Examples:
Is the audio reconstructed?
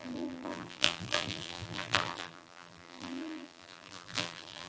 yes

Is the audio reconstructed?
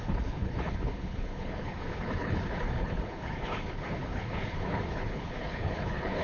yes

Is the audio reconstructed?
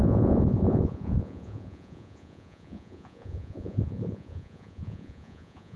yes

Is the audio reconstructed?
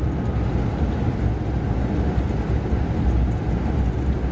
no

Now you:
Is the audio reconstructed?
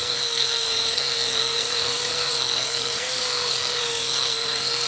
yes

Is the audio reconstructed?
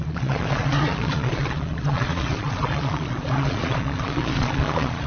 yes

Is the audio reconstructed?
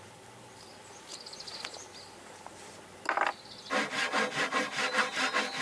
no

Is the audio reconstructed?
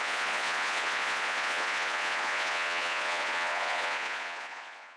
yes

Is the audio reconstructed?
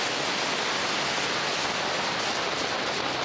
no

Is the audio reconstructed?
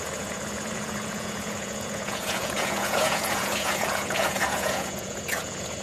yes